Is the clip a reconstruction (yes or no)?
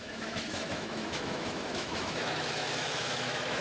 yes